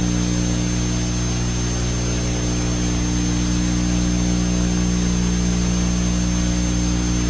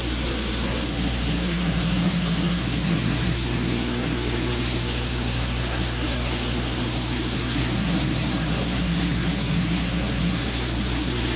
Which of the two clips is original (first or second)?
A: first